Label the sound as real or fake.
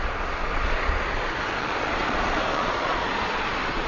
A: fake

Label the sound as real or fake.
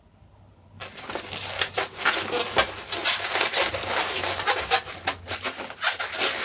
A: real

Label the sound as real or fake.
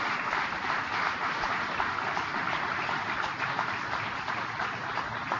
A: real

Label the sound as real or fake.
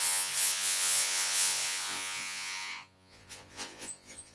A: fake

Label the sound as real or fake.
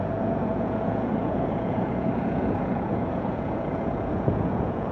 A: fake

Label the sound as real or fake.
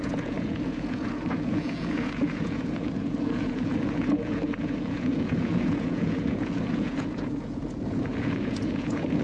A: fake